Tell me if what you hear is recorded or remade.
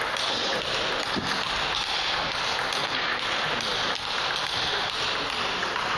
recorded